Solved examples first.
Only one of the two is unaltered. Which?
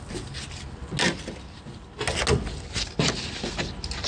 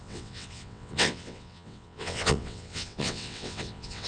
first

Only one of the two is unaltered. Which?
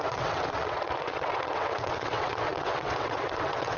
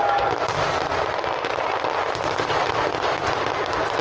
second